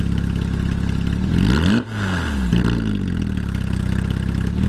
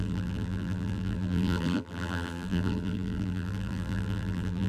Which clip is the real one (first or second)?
first